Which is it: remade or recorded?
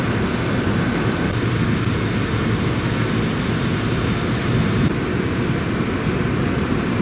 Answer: recorded